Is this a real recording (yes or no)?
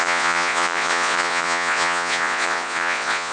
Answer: no